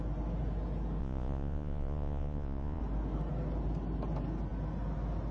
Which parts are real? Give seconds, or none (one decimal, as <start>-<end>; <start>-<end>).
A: 0.0-1.0; 2.8-5.3